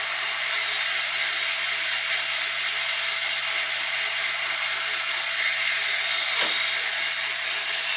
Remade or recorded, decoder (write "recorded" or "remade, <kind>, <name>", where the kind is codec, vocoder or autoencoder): remade, vocoder, BigVGAN v2